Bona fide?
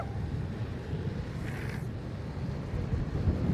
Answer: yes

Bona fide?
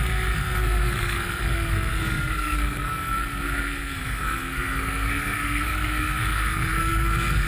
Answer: no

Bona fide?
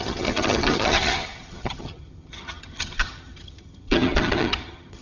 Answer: no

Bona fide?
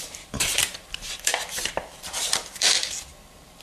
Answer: no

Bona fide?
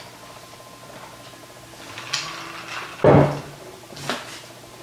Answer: yes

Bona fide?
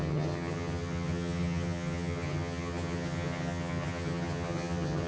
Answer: no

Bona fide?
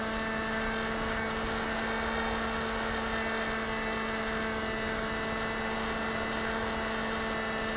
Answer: yes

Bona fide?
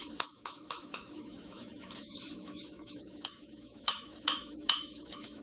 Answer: no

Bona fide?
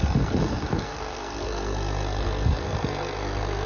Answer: no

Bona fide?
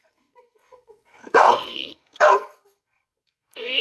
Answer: no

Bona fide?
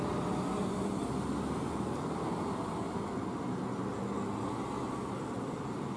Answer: yes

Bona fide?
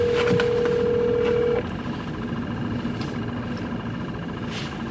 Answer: yes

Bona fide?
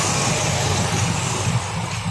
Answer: yes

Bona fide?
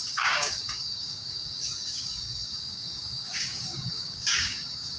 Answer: no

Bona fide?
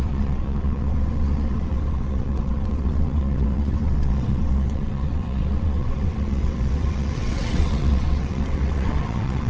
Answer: no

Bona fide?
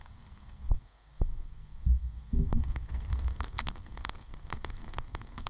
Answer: no